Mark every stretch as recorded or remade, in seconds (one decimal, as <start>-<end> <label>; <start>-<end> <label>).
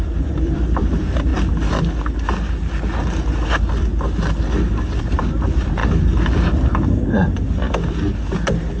0.0-1.3 remade; 1.3-5.0 recorded; 5.0-5.8 remade; 5.8-8.8 recorded